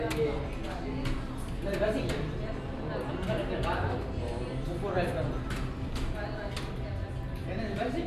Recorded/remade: recorded